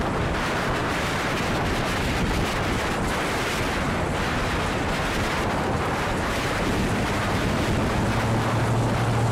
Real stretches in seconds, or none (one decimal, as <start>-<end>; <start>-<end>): 0.0-9.3